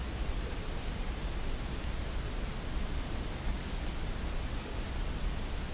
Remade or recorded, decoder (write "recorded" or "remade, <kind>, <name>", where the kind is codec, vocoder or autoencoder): recorded